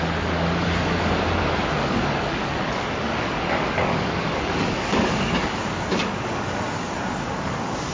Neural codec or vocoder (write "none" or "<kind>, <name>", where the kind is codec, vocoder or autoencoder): codec, DAC